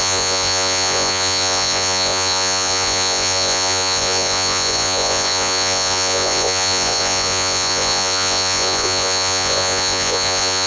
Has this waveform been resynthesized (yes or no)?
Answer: yes